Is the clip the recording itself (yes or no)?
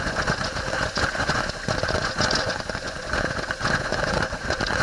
no